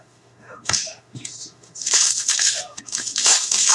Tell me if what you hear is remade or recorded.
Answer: remade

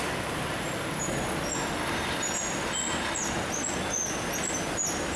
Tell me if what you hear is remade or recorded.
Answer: recorded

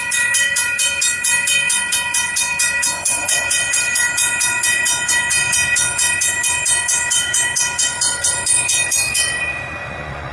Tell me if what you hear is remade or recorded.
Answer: remade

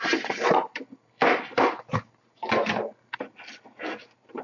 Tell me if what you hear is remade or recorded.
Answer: remade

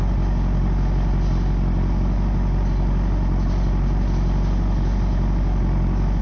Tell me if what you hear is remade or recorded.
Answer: recorded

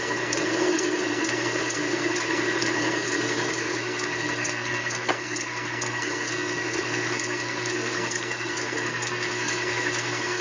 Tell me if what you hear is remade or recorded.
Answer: remade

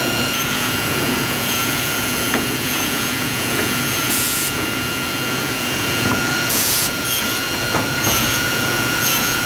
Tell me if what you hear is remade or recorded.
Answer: remade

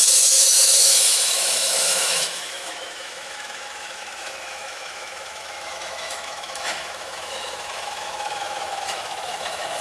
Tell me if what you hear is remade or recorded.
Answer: remade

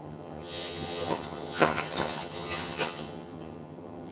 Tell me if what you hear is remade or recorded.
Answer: remade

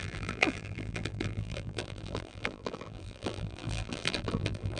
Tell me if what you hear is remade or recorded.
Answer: remade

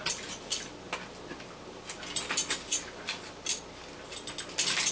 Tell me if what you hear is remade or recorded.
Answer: recorded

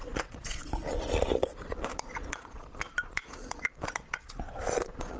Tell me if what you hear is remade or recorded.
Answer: remade